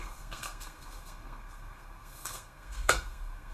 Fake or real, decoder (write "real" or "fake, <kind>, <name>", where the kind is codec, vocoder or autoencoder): fake, codec, SNAC